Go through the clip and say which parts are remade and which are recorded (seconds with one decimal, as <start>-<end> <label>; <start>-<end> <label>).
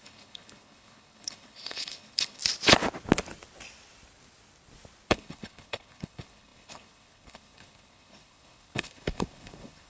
0.0-2.4 remade; 2.4-5.1 recorded; 5.1-9.9 remade